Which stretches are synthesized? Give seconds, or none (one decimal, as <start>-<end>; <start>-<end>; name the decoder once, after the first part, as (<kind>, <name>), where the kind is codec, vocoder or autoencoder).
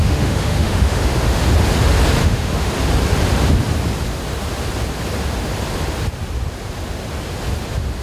0.0-1.4 (autoencoder, DAC-VAE); 2.2-2.7